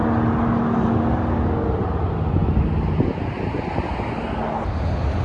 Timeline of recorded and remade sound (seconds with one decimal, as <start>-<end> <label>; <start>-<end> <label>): 0.0-5.2 recorded